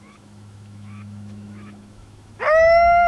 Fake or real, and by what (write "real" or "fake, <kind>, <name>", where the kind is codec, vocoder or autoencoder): fake, autoencoder, DAC-VAE